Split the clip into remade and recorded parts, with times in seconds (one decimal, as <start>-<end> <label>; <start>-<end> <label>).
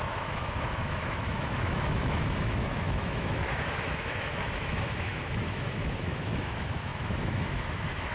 0.0-8.1 remade